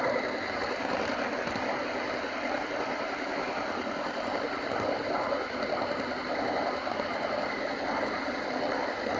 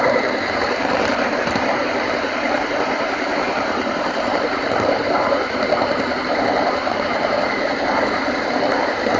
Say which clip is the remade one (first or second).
second